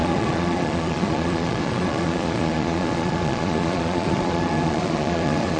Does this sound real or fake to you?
fake